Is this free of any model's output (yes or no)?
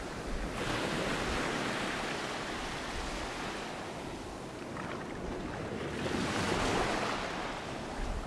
yes